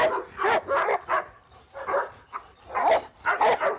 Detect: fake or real real